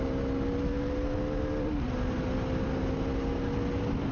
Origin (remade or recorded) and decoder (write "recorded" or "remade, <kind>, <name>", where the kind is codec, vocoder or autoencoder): recorded